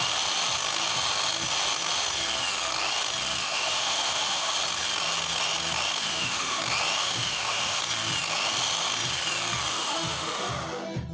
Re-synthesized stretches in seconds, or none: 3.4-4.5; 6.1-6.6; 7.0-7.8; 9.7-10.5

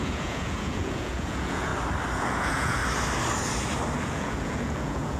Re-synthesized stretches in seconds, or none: 0.0-1.7; 2.2-2.8; 4.0-5.2

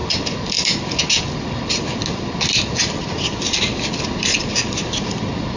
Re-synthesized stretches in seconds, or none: none

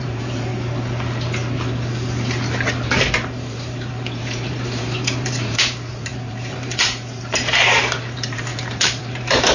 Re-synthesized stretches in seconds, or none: 0.0-0.5; 2.9-9.5

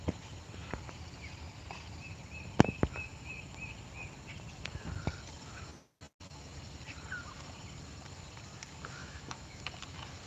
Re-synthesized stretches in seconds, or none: 9.0-9.6